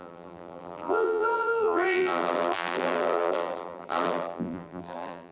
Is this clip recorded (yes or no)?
no